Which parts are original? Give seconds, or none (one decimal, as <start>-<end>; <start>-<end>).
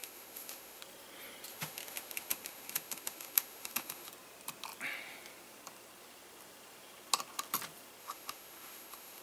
0.8-1.5; 4.1-8.0